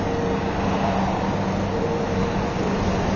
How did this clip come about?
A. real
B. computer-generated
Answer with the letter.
A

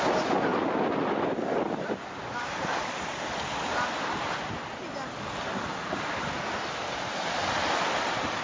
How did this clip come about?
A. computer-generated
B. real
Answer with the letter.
B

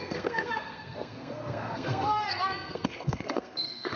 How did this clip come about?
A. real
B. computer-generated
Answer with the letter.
B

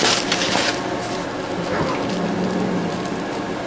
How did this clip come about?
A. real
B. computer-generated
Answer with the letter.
A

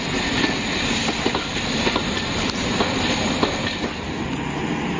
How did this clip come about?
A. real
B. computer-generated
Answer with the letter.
A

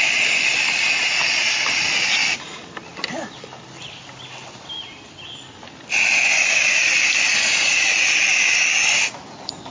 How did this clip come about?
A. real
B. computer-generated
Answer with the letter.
A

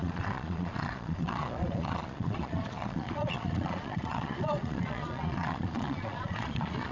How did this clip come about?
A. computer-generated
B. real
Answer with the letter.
A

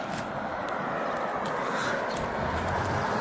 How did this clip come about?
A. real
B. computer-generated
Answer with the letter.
A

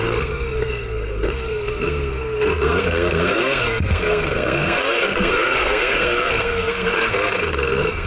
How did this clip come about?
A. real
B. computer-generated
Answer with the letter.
B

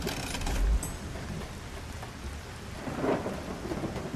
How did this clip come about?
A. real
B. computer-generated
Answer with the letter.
A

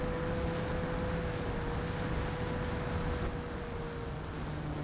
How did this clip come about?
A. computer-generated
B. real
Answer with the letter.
B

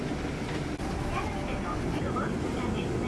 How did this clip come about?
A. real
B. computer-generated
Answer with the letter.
A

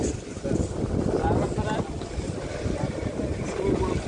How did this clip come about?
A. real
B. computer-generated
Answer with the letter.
A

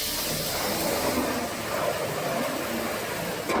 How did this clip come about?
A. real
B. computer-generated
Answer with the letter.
A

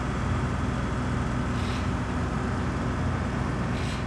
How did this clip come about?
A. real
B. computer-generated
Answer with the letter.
A